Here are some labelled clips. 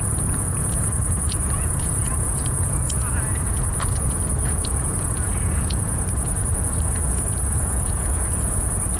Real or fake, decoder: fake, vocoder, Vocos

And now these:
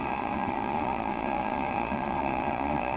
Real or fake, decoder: fake, vocoder, Vocos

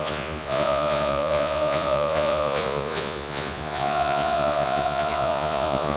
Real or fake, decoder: fake, vocoder, Vocos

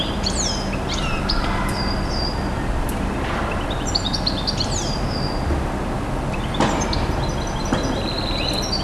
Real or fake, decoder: real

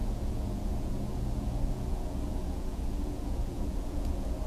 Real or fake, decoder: fake, vocoder, Vocos